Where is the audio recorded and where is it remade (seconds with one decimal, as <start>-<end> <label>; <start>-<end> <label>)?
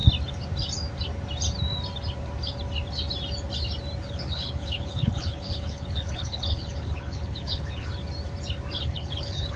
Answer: 0.0-4.0 recorded; 4.0-7.9 remade; 7.9-8.8 recorded; 8.8-9.6 remade